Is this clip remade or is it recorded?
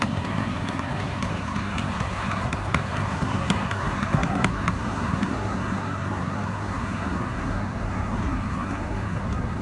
remade